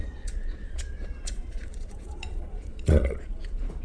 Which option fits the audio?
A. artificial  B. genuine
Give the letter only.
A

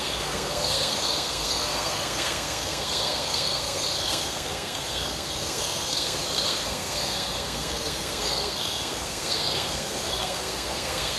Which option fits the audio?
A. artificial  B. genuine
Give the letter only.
A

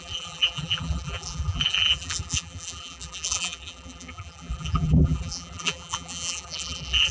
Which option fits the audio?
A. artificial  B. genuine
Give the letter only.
A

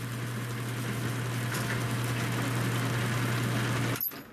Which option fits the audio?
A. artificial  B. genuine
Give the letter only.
B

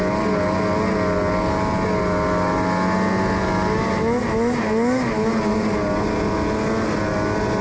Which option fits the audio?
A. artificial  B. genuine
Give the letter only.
B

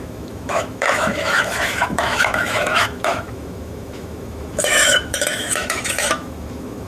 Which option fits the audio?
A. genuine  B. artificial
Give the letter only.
B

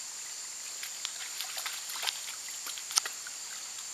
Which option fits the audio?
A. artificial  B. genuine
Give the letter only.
B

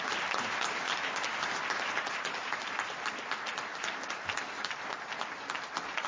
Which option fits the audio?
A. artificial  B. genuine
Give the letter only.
B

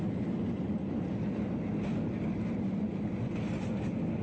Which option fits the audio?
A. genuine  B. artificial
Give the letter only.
A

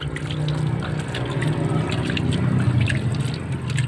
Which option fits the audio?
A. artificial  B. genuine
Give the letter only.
B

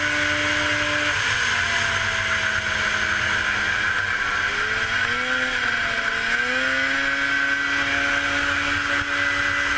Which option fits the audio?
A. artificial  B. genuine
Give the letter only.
B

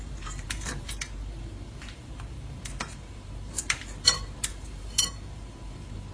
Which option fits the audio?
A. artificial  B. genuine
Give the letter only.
A